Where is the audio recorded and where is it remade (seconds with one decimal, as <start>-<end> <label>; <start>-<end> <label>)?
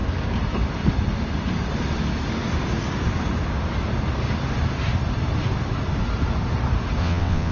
0.0-7.0 recorded; 7.0-7.5 remade